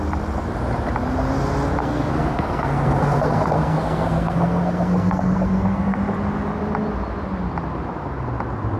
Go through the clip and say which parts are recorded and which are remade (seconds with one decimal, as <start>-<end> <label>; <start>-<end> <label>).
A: 0.0-1.8 recorded; 1.8-6.0 remade; 6.0-8.8 recorded